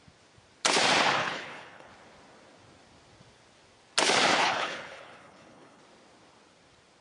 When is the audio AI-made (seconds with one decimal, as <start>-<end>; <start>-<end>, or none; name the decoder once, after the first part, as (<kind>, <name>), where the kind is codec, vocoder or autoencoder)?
1.2-1.9 (codec, HILCodec); 4.4-5.8

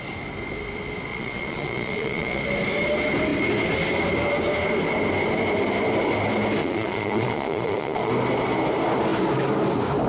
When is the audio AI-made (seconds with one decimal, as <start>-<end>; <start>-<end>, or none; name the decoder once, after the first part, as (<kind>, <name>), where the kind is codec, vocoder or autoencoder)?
1.1-2.4 (vocoder, Vocos); 6.6-8.1

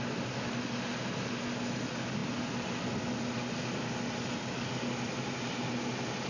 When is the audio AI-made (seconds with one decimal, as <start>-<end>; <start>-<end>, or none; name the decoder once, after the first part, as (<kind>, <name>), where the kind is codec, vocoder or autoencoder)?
none

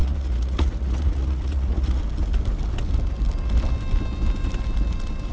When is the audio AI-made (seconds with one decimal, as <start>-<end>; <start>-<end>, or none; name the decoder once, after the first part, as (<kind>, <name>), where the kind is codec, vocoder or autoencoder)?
0.0-2.0 (vocoder, Vocos)

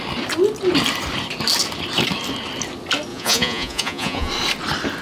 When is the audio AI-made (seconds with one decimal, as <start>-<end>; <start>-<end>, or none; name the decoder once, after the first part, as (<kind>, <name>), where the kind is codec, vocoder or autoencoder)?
3.1-4.3 (vocoder, Vocos)

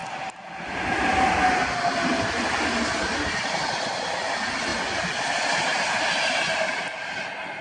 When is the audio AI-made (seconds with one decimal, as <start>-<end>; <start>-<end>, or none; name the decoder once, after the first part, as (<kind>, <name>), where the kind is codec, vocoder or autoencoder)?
none

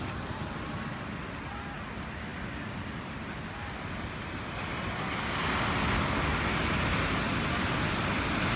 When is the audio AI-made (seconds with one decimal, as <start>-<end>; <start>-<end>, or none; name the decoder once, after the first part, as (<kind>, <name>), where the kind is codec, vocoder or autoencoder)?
none